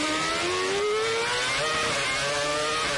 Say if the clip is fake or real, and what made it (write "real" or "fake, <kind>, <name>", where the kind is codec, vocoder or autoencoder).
real